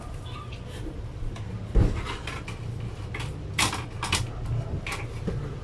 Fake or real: real